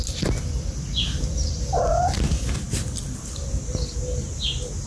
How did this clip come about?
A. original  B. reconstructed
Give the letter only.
A